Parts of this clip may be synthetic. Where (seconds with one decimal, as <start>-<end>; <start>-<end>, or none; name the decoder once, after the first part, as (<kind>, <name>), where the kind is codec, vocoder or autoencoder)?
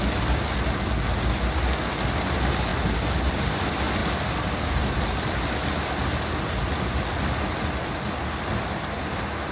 none